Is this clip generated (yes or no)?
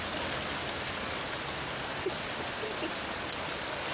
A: no